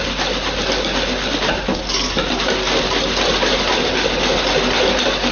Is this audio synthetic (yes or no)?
no